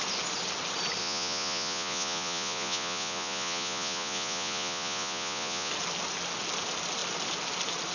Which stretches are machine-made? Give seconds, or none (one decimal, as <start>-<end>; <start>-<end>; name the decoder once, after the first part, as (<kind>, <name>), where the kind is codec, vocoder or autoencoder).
1.0-5.7 (vocoder, Vocos)